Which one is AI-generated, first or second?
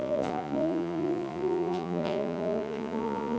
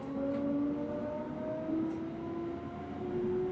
first